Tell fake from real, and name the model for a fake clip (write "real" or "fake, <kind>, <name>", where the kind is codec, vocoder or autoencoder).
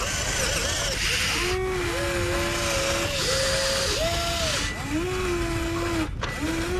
real